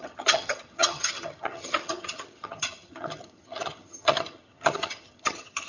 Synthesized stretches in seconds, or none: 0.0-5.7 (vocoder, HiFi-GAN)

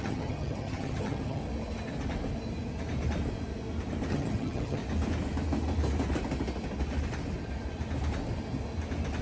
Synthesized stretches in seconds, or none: 0.0-1.4 (vocoder, HiFi-GAN); 4.1-4.8

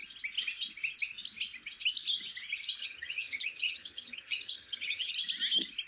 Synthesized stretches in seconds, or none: 2.8-5.1 (vocoder, HiFi-GAN)

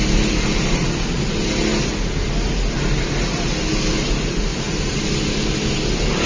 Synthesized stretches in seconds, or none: none